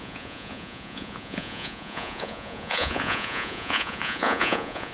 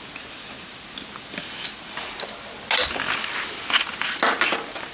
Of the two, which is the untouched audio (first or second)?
second